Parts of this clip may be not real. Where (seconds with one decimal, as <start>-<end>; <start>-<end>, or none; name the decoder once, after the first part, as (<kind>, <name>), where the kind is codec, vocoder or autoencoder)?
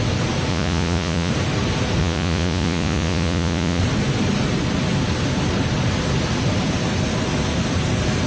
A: 0.5-1.3 (vocoder, Vocos); 2.0-3.8